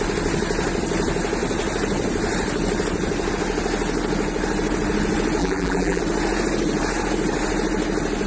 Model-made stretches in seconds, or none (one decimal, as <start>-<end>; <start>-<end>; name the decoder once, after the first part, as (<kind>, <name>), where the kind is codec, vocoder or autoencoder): 5.4-6.0 (vocoder, BigVGAN v2)